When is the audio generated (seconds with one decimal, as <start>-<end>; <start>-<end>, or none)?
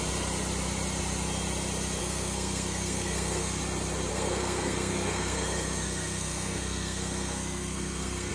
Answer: 2.0-3.6; 4.1-8.3